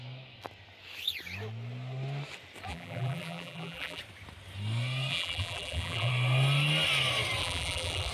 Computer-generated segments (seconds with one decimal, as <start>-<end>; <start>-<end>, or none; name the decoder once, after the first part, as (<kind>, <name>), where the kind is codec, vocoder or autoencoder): 2.7-4.0 (vocoder, BigVGAN v2); 5.1-6.1; 7.4-8.1